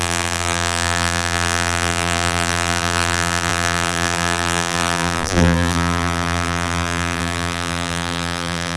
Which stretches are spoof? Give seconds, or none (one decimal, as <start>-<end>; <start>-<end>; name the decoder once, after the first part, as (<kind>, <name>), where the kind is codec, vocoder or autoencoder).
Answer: 0.0-8.8 (vocoder, BigVGAN v2)